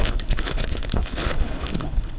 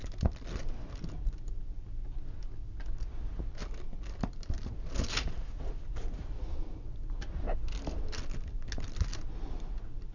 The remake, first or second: first